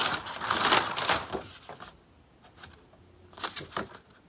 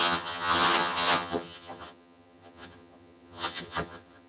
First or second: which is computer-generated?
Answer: second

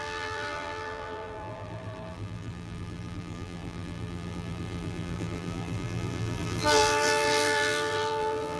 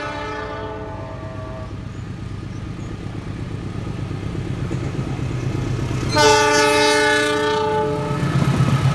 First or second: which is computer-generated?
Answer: first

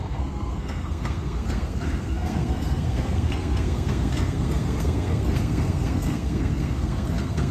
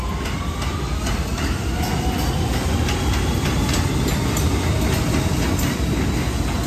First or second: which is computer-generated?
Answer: first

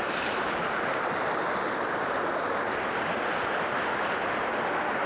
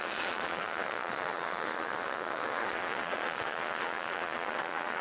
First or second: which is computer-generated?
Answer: second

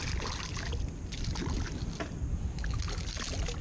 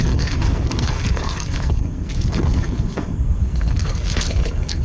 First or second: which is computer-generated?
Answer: second